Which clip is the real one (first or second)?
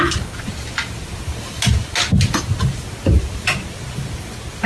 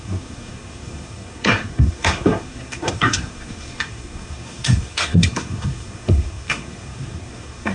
first